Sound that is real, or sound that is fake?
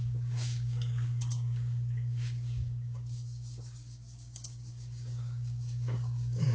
fake